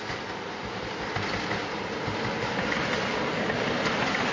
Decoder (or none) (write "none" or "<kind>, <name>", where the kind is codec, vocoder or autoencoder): none